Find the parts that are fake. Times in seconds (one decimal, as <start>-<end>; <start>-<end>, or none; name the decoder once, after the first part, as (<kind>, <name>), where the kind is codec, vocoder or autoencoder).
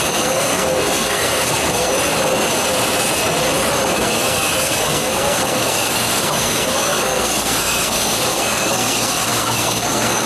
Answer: 0.0-1.9 (codec, SNAC); 3.9-10.3